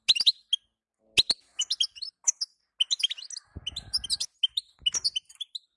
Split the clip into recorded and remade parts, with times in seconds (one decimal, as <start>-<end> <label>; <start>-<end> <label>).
0.0-5.8 recorded